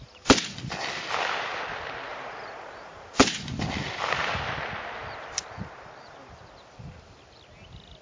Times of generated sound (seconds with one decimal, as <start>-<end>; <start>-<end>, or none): 2.1-3.2